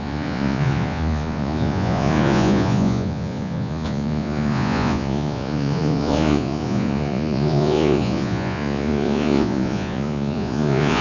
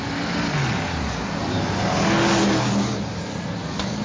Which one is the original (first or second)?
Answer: second